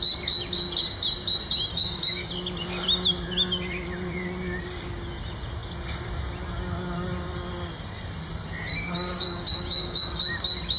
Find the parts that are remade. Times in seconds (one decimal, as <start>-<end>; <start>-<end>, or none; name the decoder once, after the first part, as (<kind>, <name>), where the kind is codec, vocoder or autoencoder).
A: 1.7-2.3 (codec, DAC); 8.6-10.2